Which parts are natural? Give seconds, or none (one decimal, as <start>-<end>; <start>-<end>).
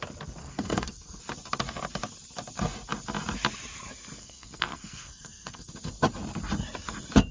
0.0-0.4; 1.2-4.2; 5.7-7.3